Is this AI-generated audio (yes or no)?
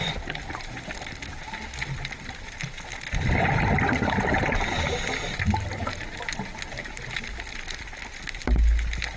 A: no